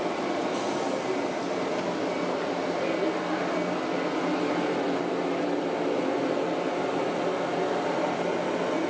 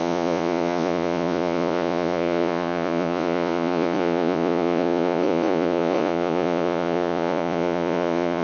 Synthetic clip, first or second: second